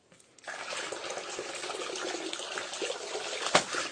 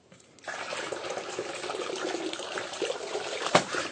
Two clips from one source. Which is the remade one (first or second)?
second